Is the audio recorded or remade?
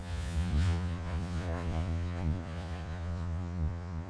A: remade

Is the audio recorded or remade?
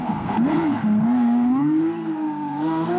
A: remade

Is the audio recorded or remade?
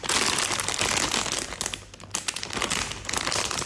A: recorded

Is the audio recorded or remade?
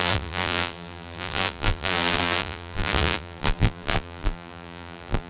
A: remade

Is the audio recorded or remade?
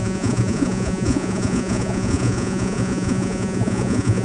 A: remade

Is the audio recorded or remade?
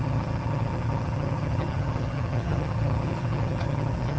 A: remade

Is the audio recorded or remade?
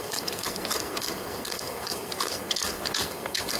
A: remade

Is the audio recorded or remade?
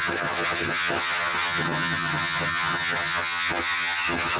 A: remade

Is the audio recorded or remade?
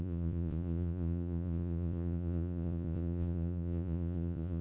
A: remade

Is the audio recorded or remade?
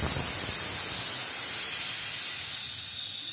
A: recorded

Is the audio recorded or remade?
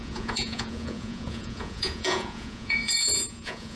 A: remade